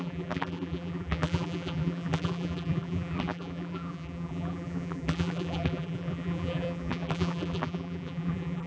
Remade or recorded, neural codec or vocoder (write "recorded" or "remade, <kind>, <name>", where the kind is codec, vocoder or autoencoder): remade, vocoder, BigVGAN v2